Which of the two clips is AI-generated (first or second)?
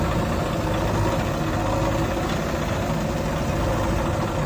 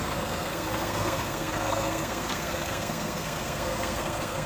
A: second